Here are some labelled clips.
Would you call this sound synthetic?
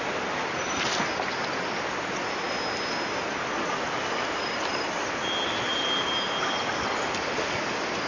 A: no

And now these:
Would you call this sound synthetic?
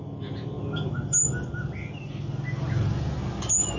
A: no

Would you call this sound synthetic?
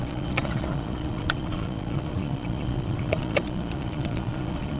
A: yes